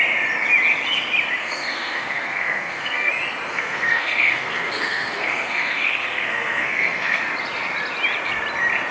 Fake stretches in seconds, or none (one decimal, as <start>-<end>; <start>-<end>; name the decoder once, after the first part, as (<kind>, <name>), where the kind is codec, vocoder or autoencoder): 1.4-3.1 (codec, SNAC); 3.5-7.2